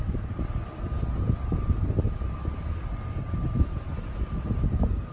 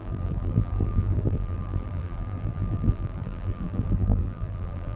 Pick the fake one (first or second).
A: second